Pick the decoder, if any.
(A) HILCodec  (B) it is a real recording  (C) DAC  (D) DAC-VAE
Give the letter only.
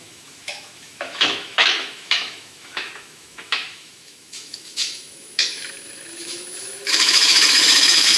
D